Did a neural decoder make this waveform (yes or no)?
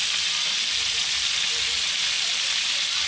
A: no